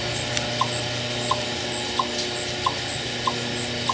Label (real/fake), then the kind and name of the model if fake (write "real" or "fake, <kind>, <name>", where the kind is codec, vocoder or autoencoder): real